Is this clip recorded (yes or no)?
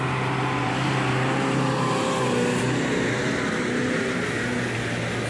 yes